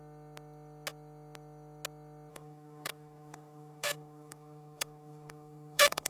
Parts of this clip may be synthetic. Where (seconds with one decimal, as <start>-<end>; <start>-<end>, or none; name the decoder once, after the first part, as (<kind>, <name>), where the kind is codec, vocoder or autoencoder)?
2.3-6.1 (codec, DAC)